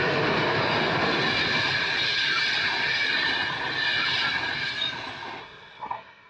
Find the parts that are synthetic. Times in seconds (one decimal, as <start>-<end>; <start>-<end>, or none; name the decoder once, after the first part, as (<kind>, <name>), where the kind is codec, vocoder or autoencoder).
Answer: 5.4-6.3 (codec, SNAC)